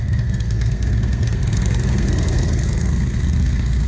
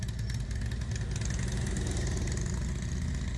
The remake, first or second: first